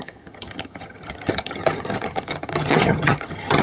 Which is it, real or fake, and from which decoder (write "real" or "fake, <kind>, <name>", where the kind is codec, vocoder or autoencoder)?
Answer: fake, vocoder, HiFi-GAN